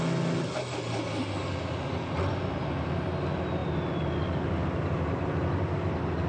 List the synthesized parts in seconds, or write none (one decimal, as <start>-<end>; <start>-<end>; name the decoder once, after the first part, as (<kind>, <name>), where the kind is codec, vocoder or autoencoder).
none